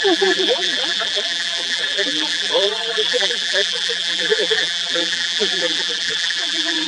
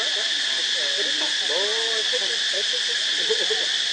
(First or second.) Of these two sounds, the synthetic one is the first